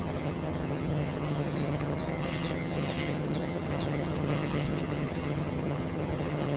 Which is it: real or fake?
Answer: fake